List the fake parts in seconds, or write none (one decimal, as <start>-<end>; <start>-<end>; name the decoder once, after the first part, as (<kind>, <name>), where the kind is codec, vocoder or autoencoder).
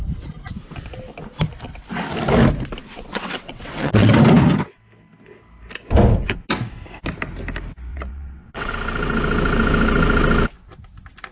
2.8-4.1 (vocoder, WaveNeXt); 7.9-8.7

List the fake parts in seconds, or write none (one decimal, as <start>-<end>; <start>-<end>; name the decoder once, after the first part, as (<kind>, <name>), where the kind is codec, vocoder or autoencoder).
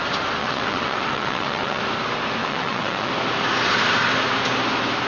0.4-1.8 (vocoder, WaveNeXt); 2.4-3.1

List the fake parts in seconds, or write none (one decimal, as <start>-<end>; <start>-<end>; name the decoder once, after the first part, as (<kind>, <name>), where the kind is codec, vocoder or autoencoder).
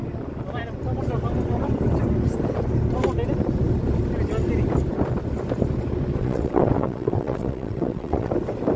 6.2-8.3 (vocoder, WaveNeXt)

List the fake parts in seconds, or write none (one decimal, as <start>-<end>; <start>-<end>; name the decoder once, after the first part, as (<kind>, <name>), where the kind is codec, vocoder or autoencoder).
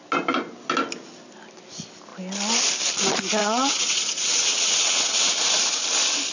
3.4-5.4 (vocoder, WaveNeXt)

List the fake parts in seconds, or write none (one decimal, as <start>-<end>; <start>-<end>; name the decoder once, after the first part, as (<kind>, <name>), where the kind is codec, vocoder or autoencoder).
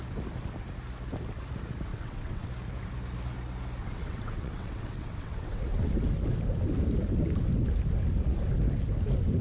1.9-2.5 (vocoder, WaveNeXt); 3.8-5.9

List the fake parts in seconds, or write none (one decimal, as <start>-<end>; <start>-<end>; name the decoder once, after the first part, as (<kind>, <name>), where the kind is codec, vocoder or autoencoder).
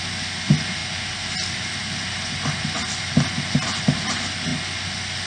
none